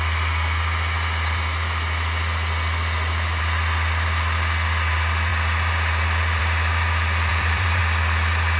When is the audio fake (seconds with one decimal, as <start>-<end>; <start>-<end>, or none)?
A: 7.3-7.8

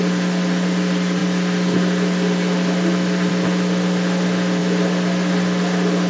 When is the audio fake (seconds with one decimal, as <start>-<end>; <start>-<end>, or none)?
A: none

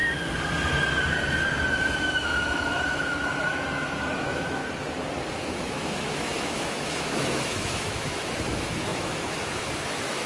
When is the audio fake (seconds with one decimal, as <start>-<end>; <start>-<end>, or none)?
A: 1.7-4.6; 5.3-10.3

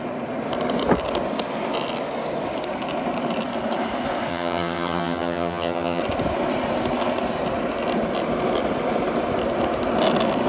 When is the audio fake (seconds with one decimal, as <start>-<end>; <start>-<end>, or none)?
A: 4.3-6.0